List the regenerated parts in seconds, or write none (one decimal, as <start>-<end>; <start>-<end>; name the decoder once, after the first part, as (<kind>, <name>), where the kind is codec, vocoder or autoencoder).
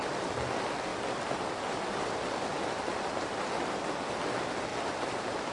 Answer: 0.9-4.2 (vocoder, BigVGAN v2); 4.7-5.5